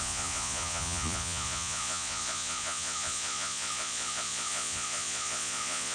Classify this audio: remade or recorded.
remade